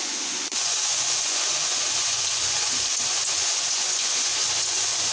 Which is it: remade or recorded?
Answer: remade